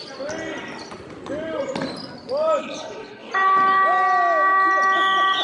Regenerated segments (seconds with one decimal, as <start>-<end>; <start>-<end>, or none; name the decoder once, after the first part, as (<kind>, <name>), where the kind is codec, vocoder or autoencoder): 2.6-3.3 (codec, HILCodec)